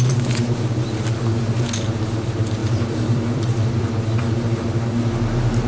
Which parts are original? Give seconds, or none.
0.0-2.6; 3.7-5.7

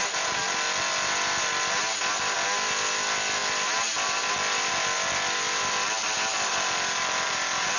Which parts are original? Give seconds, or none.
0.0-7.8

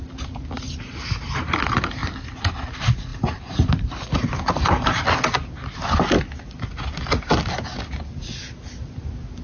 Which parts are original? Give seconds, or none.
0.0-3.1; 5.0-9.4

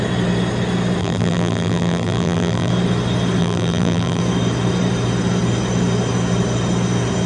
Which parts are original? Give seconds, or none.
0.0-1.0; 2.7-3.4; 4.2-7.3